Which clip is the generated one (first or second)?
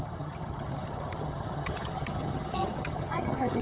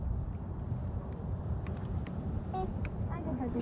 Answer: first